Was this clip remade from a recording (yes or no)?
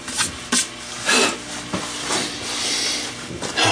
no